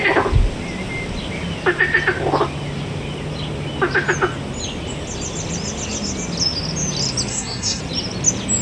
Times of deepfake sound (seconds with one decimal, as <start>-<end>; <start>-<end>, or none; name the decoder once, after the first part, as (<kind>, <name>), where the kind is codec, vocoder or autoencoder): 7.3-7.8 (codec, SNAC)